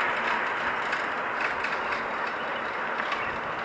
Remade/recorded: recorded